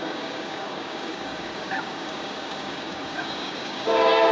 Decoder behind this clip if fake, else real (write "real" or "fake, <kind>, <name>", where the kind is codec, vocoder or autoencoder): fake, codec, DAC